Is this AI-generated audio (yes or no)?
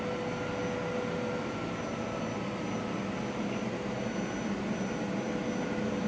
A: no